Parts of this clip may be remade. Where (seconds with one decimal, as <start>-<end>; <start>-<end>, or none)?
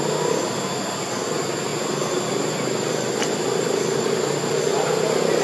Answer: none